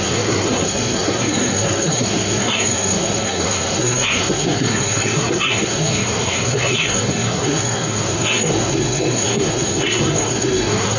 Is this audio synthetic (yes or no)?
yes